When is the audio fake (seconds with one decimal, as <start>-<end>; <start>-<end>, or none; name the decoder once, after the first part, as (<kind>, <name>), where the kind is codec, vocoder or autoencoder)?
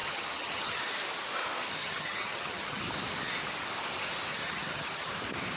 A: 0.0-0.8 (vocoder, HiFi-GAN); 1.8-2.8; 4.3-5.1